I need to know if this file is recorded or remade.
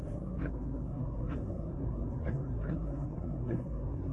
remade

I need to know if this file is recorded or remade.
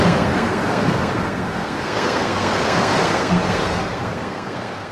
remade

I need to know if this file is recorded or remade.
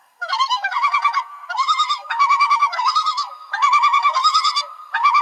remade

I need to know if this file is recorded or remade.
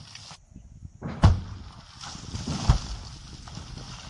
recorded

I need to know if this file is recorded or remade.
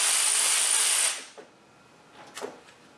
recorded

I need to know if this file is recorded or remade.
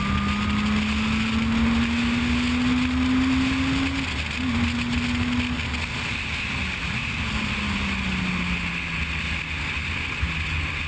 recorded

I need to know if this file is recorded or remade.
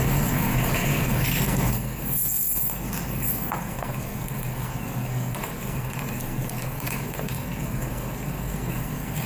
remade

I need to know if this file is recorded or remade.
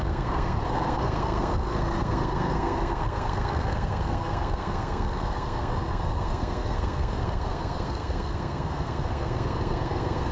remade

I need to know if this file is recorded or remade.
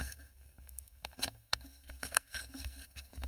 remade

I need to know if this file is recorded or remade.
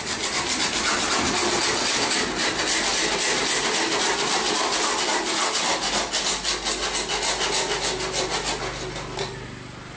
recorded